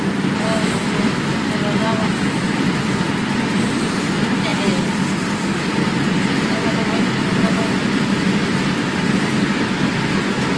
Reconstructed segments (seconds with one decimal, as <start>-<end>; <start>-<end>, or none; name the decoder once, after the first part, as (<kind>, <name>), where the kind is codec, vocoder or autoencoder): none